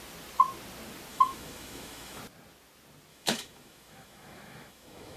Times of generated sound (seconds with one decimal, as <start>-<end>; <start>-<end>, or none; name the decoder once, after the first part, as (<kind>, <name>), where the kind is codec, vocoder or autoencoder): 1.1-2.2 (autoencoder, DAC-VAE); 3.1-5.2